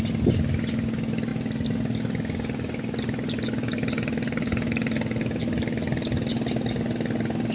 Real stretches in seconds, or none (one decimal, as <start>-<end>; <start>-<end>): 0.0-7.5